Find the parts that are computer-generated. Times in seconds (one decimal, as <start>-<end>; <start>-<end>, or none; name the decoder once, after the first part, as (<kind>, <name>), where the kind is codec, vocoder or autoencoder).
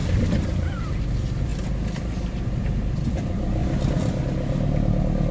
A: 0.0-1.5 (vocoder, BigVGAN v2); 3.1-3.6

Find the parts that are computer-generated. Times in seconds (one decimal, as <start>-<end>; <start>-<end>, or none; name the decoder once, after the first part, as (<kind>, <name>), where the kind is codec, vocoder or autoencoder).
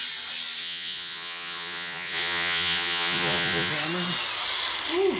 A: 0.6-3.7 (vocoder, Vocos)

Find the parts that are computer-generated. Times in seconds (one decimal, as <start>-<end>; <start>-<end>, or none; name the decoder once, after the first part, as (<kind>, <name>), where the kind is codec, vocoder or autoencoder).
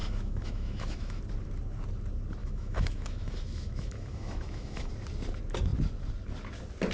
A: 0.0-1.2 (autoencoder, DAC-VAE); 2.4-4.9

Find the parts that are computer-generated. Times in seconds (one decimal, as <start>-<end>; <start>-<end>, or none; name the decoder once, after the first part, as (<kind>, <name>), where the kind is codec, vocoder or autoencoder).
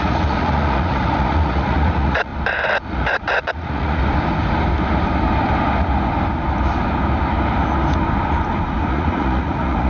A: 0.0-2.3 (vocoder, Vocos); 2.9-4.0; 8.9-9.9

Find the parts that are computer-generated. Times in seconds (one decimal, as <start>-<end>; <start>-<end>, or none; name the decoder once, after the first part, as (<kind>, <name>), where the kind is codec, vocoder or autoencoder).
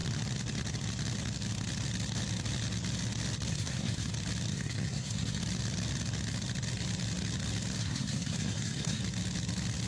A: 3.5-4.1 (codec, SNAC); 4.5-5.4; 7.8-9.0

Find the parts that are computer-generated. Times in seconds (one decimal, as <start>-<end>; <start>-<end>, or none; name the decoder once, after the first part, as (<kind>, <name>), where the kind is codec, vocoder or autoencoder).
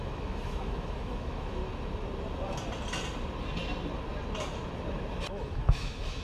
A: 0.0-1.6 (autoencoder, DAC-VAE); 5.3-6.2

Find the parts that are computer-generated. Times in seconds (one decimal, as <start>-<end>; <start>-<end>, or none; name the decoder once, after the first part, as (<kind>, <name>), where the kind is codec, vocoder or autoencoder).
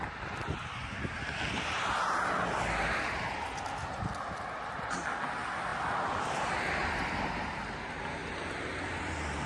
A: none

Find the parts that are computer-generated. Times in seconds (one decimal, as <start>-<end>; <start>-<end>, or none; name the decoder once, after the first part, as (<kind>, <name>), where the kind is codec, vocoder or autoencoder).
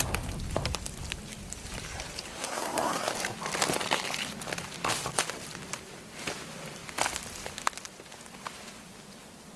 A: 2.3-3.1 (codec, SNAC)